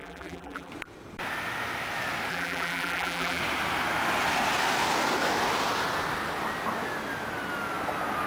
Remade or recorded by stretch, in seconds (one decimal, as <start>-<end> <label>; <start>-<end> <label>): 0.0-0.7 remade; 0.7-2.3 recorded; 2.3-3.4 remade; 3.4-8.3 recorded